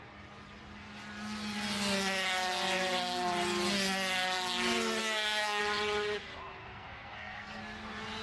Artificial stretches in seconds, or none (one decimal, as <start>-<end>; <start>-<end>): 5.0-5.6; 6.6-7.6